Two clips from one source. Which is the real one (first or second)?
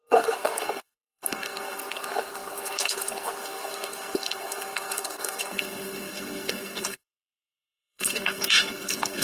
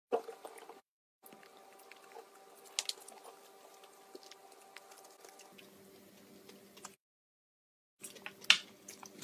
second